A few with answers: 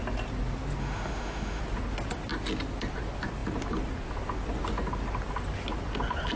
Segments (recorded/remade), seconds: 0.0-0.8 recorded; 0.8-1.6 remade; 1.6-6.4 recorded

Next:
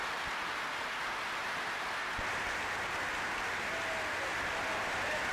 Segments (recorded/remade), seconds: 0.0-5.3 recorded

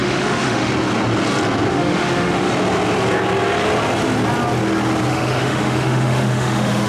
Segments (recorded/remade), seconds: 0.0-0.7 remade; 0.7-1.7 recorded; 1.7-2.5 remade; 2.5-5.1 recorded; 5.1-6.9 remade

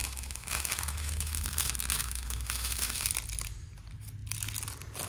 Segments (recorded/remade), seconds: 0.0-3.1 remade; 3.1-5.1 recorded

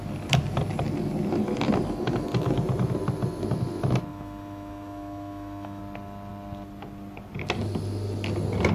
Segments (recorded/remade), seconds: 0.0-4.1 recorded; 4.1-5.8 remade; 5.8-8.7 recorded

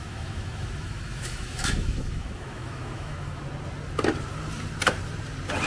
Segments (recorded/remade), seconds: 0.0-3.4 remade; 3.4-5.7 recorded